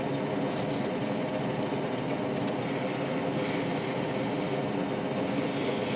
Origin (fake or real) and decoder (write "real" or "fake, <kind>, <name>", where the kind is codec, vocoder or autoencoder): real